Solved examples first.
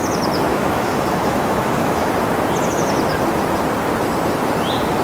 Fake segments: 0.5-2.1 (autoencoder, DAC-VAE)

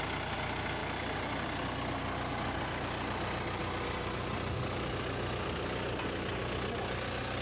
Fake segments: 0.8-1.6 (vocoder, BigVGAN v2)

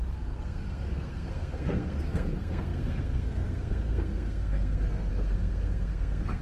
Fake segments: 0.0-6.4 (codec, SNAC)

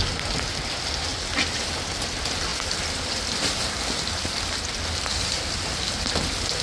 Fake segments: none

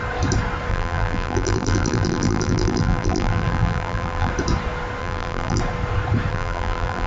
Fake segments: 0.7-4.3 (vocoder, BigVGAN v2); 5.0-5.6; 6.3-7.1